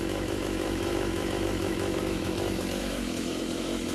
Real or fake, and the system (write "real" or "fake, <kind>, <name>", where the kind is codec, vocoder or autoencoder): fake, autoencoder, DAC-VAE